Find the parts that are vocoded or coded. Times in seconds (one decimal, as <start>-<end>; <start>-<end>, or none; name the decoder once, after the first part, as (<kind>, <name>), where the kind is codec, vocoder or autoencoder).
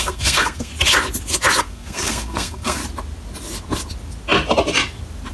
0.0-0.7 (codec, SNAC); 1.6-2.8